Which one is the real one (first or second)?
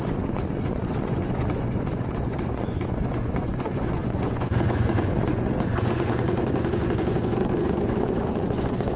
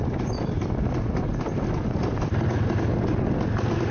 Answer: second